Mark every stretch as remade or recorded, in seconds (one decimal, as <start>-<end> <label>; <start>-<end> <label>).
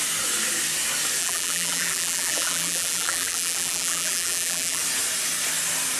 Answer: 0.0-1.2 recorded; 1.2-4.8 remade; 4.8-6.0 recorded